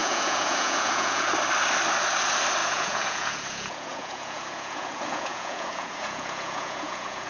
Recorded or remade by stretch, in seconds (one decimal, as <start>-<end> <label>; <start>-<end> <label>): 0.0-1.3 remade; 1.3-2.6 recorded; 2.6-7.3 remade